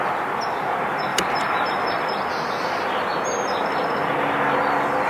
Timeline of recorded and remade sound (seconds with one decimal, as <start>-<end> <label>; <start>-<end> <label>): 0.0-1.1 recorded; 1.1-1.8 remade; 1.8-5.1 recorded